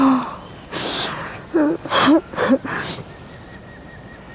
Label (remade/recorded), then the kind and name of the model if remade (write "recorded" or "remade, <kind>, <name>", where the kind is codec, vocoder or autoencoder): recorded